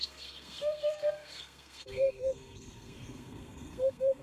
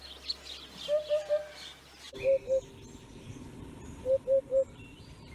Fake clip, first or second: first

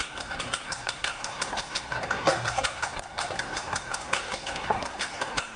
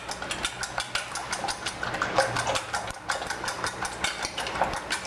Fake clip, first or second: first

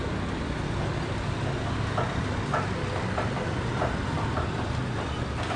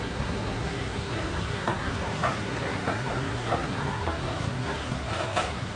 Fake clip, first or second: second